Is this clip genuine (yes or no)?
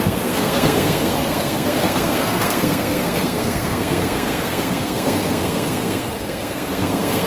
no